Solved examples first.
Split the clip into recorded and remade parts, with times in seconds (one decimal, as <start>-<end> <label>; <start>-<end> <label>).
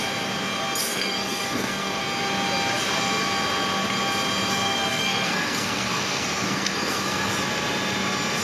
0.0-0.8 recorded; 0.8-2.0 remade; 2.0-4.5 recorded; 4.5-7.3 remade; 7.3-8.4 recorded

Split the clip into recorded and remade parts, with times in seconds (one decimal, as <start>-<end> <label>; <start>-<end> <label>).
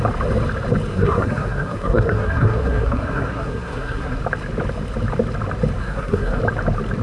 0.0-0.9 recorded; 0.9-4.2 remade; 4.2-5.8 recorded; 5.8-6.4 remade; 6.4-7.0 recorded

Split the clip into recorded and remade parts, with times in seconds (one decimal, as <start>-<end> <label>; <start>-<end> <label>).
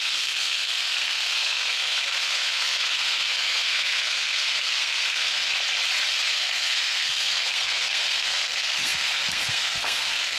0.0-5.5 remade; 5.5-6.3 recorded; 6.3-10.4 remade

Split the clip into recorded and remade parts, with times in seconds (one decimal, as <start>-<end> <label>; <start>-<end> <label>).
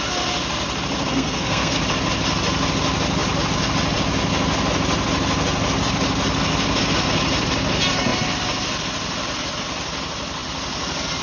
0.0-1.1 recorded; 1.1-1.8 remade; 1.8-11.2 recorded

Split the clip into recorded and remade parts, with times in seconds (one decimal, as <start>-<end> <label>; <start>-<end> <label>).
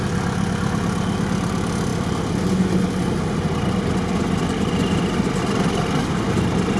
0.0-6.8 recorded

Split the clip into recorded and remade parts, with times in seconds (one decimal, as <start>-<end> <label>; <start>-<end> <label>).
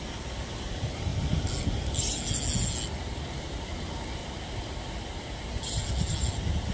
0.0-6.7 recorded